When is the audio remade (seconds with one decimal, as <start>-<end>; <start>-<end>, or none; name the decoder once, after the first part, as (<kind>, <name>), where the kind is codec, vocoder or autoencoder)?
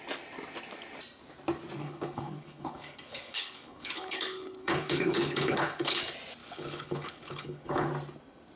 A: 1.8-6.0 (codec, HILCodec); 6.4-7.9